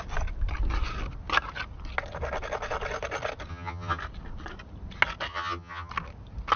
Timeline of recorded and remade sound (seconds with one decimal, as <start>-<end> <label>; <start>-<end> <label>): 0.0-3.5 recorded; 3.5-4.0 remade; 4.0-5.3 recorded; 5.3-5.9 remade; 5.9-6.6 recorded